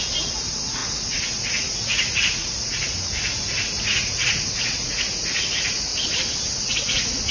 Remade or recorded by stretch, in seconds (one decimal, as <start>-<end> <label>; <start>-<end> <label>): 0.0-5.9 remade; 5.9-6.5 recorded; 6.5-7.3 remade